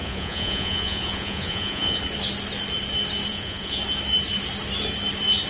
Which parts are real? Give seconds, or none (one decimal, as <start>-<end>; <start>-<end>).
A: 2.0-3.3; 3.8-5.5

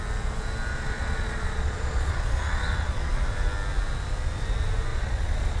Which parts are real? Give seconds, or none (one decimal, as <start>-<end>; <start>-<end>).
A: 0.0-0.7; 3.1-4.9

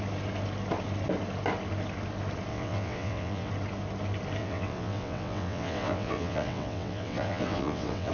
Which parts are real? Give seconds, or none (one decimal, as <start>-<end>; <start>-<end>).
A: 0.0-2.5; 3.5-4.4